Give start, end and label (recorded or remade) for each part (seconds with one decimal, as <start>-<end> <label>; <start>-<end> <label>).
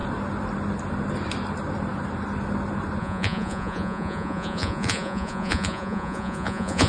0.0-3.0 recorded; 3.0-6.9 remade